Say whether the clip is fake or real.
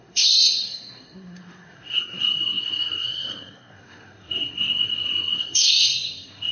fake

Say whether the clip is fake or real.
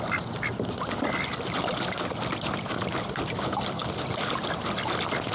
real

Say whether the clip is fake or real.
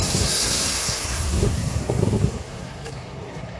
fake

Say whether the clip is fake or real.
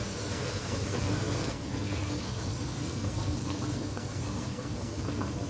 fake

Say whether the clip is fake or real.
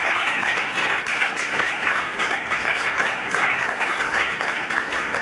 fake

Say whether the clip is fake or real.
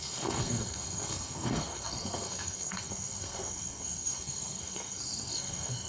fake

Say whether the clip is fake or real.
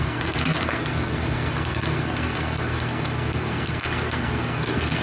fake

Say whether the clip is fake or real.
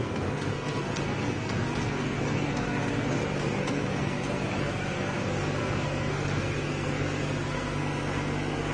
fake